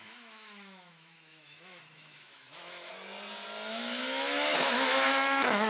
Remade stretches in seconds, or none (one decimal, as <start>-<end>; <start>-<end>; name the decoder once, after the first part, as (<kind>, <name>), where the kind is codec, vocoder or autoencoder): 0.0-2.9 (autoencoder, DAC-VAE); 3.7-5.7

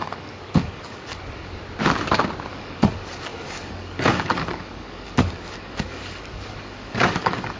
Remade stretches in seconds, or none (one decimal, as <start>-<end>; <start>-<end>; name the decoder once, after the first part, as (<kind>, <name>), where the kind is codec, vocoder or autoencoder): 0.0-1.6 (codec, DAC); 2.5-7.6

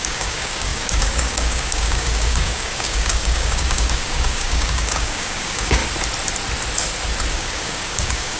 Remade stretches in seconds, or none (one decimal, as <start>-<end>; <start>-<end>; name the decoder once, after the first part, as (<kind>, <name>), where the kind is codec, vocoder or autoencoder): 0.0-5.8 (codec, DAC); 7.3-8.4

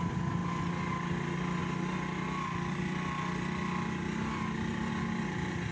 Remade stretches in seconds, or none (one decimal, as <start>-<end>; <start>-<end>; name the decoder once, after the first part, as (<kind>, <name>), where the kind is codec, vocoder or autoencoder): none